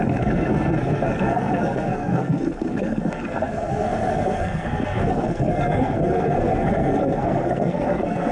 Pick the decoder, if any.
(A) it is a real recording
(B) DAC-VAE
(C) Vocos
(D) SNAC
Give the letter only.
D